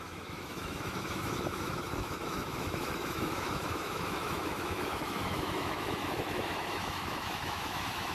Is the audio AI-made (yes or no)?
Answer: yes